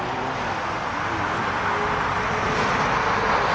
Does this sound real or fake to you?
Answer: real